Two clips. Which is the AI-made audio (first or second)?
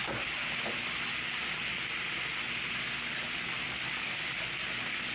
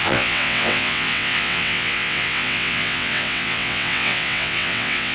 second